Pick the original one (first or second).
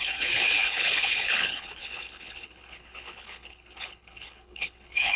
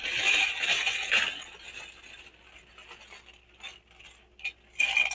second